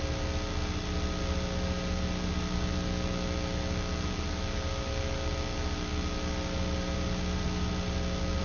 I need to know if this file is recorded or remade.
recorded